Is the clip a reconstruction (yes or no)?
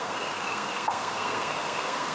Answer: yes